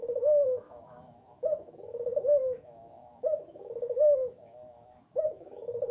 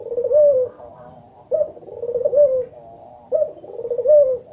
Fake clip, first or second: first